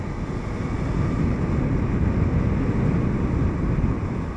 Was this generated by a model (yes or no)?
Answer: no